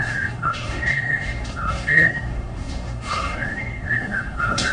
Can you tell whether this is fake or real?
fake